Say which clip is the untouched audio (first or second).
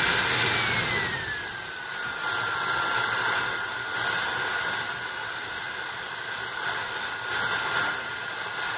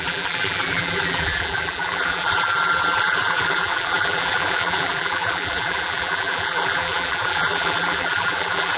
first